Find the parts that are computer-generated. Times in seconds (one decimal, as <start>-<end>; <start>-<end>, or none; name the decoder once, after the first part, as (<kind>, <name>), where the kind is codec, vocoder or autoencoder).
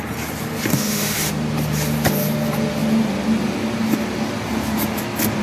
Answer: 0.7-1.3 (autoencoder, DAC-VAE)